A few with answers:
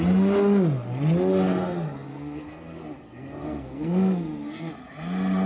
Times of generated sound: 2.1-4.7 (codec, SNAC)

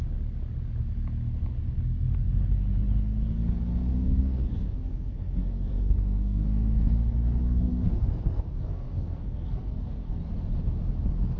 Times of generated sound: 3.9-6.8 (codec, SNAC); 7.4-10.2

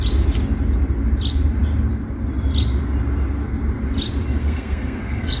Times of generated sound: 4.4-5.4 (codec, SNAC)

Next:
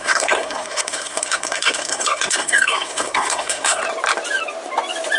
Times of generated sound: 0.0-3.8 (codec, SNAC)